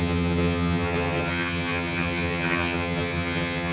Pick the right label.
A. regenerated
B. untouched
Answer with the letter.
A